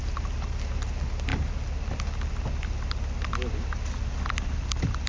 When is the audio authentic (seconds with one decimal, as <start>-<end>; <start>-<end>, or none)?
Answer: 0.0-5.1